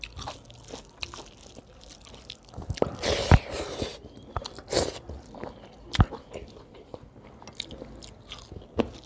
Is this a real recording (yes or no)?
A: yes